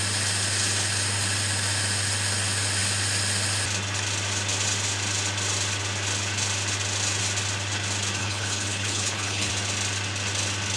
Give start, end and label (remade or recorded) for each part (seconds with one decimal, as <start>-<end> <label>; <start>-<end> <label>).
0.0-8.2 recorded; 8.2-9.5 remade; 9.5-10.8 recorded